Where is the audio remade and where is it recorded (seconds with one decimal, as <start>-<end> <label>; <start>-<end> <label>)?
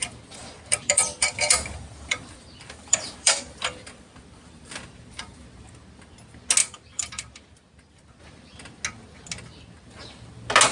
0.0-0.4 recorded; 0.4-5.2 remade; 5.2-6.6 recorded; 6.6-8.2 remade; 8.2-10.7 recorded